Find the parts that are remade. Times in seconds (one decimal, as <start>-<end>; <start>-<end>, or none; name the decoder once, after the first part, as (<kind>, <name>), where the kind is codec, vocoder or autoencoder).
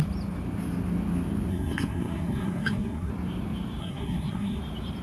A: 1.5-3.1 (codec, SNAC); 3.8-4.6